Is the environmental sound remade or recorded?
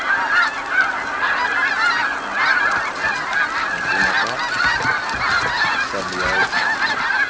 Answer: recorded